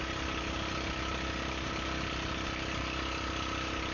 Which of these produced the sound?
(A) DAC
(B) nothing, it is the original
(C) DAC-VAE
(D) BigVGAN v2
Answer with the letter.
B